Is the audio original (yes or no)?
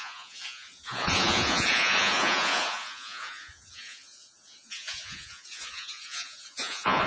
no